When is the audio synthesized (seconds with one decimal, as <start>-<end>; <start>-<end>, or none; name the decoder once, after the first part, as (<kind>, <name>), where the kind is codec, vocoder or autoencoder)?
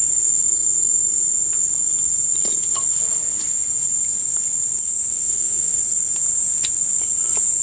5.1-5.8 (autoencoder, DAC-VAE)